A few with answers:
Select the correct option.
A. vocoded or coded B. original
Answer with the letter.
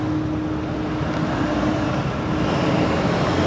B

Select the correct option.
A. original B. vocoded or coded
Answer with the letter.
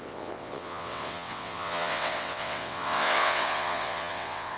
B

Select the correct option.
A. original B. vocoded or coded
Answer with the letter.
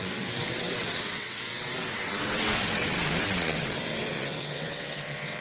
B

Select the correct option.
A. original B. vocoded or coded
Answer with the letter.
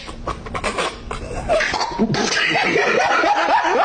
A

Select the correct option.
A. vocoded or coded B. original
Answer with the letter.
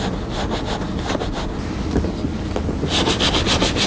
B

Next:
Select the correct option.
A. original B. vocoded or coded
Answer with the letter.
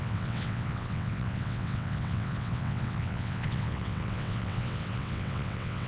B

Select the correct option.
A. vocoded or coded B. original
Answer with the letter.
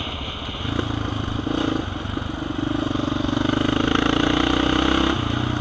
B